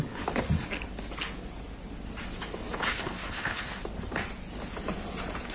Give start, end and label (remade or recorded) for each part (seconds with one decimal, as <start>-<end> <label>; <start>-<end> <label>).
0.0-2.9 recorded; 2.9-3.7 remade; 3.7-5.5 recorded